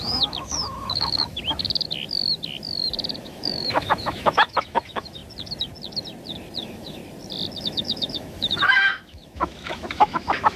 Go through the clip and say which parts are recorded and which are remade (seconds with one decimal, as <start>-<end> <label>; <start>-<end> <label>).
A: 0.0-1.4 remade; 1.4-3.2 recorded; 3.2-5.2 remade; 5.2-6.6 recorded; 6.6-7.0 remade; 7.0-7.6 recorded; 7.6-10.6 remade